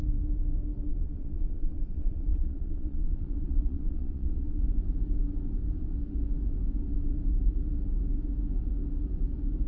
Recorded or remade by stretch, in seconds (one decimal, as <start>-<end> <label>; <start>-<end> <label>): 0.0-0.9 recorded; 0.9-4.6 remade; 4.6-9.7 recorded